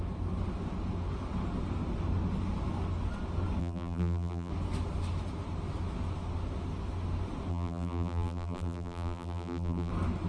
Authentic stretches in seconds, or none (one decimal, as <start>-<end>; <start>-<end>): 0.0-3.6; 4.5-7.5; 9.9-10.3